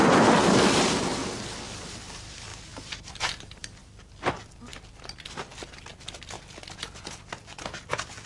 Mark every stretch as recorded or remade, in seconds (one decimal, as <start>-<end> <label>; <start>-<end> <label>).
0.0-1.2 remade; 1.2-1.9 recorded; 1.9-2.5 remade; 2.5-3.1 recorded; 3.1-5.5 remade; 5.5-8.3 recorded